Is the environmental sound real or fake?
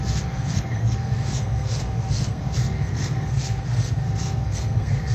fake